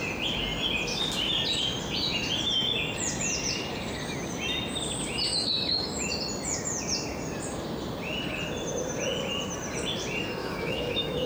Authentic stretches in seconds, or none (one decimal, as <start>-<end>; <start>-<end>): 0.0-5.3; 6.1-10.4